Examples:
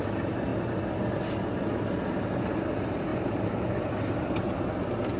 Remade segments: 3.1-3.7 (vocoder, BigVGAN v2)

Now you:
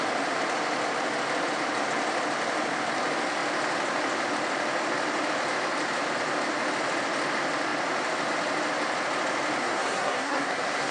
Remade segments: 9.6-10.9 (codec, SNAC)

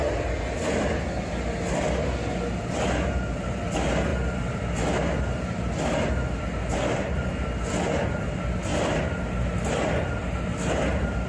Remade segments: none

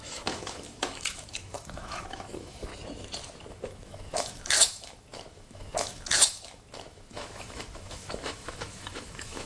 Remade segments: 0.0-2.7 (autoencoder, DAC-VAE); 3.5-9.5

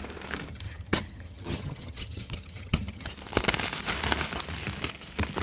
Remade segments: 0.5-3.1 (vocoder, HiFi-GAN)

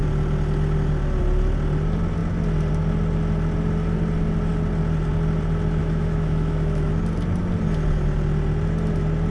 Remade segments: 5.8-7.0 (autoencoder, DAC-VAE)

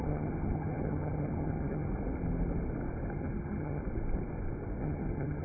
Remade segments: 0.0-1.9 (vocoder, HiFi-GAN); 3.2-3.8; 4.8-5.4